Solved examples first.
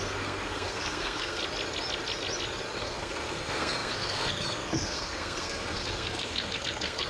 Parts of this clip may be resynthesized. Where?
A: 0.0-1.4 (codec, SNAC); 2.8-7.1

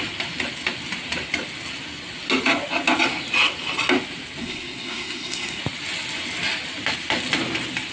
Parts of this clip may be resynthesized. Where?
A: 4.4-5.6 (codec, SNAC)

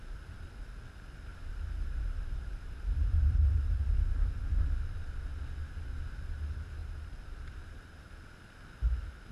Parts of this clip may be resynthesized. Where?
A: 1.3-5.4 (vocoder, BigVGAN v2); 6.8-8.0

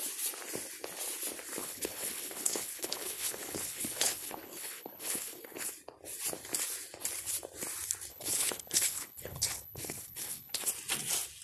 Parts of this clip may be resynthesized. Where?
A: 1.6-5.7 (codec, HILCodec); 8.1-10.7

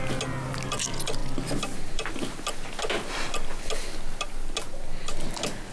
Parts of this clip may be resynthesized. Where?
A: none